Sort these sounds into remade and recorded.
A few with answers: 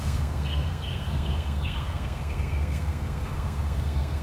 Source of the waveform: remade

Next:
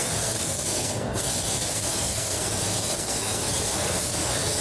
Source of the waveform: remade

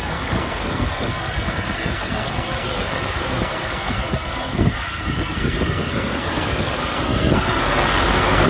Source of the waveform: remade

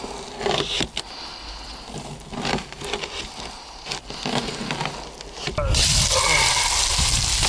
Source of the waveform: recorded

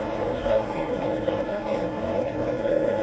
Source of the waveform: remade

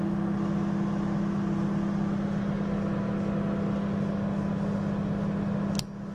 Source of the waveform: recorded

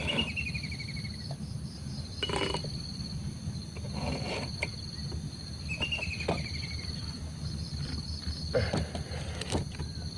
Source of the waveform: recorded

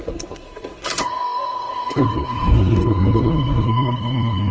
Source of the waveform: remade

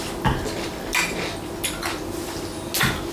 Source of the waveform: recorded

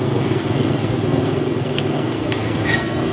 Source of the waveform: remade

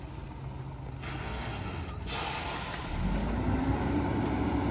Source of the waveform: recorded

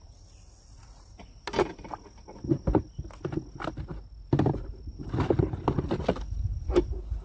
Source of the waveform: recorded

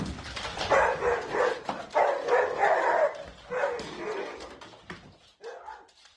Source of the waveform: recorded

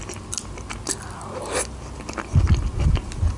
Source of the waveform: recorded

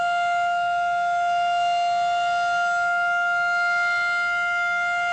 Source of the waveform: recorded